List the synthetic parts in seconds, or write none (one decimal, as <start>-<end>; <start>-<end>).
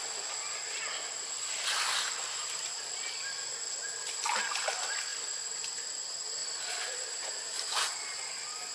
6.4-7.3